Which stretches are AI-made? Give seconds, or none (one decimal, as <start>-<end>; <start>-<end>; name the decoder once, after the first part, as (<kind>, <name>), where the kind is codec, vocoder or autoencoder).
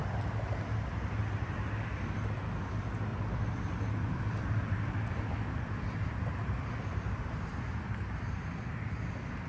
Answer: 0.0-1.9 (vocoder, BigVGAN v2); 3.1-7.2